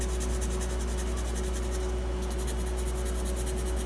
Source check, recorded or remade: recorded